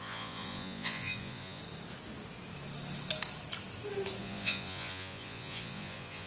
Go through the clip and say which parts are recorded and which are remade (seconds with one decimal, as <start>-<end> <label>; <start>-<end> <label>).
0.0-1.6 remade; 1.6-4.2 recorded; 4.2-6.3 remade